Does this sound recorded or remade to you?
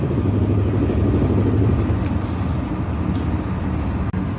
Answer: recorded